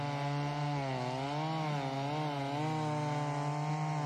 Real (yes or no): yes